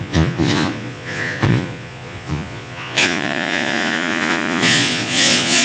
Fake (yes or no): yes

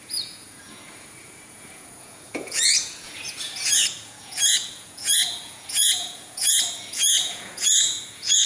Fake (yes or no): yes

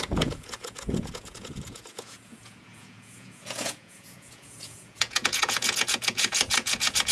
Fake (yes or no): yes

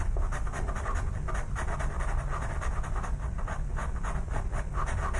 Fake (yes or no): no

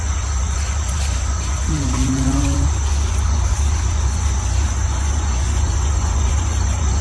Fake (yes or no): yes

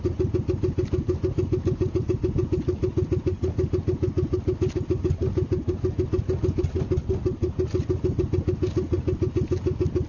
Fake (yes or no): no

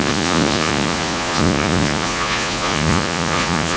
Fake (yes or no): yes